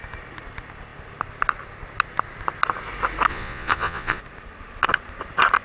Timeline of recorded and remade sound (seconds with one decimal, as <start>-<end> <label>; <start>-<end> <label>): 0.0-3.3 recorded; 3.3-4.2 remade; 4.2-5.6 recorded